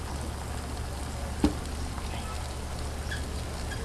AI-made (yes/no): no